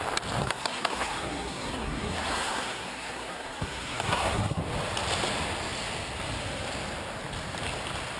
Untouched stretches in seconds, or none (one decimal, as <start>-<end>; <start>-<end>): 0.0-0.4; 4.6-8.2